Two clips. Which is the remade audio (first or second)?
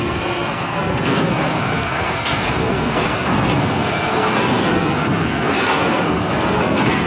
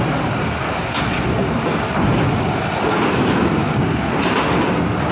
first